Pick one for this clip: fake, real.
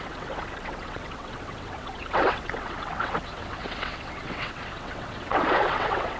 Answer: fake